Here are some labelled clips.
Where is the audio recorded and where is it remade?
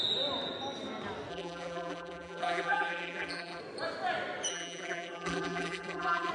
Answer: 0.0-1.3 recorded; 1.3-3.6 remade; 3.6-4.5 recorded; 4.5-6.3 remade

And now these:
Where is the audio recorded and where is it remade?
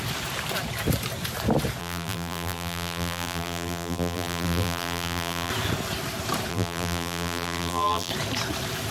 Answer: 0.0-1.8 recorded; 1.8-5.5 remade; 5.5-6.5 recorded; 6.5-8.1 remade; 8.1-8.9 recorded